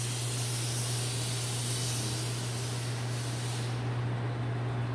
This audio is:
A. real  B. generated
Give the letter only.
A